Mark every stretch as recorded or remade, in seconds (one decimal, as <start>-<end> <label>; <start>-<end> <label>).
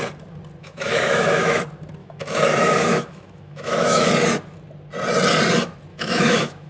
0.0-0.6 recorded; 0.6-1.6 remade; 1.6-2.0 recorded; 2.0-4.1 remade; 4.1-5.9 recorded; 5.9-6.7 remade